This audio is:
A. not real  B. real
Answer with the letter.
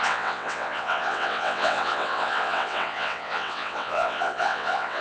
A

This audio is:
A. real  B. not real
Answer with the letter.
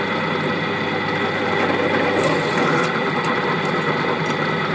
A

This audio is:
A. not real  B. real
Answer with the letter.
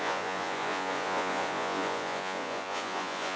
A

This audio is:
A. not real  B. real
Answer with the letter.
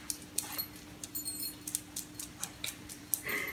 B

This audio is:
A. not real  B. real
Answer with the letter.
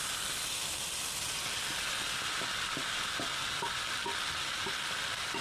B